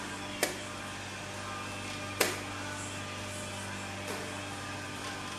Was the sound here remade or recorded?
recorded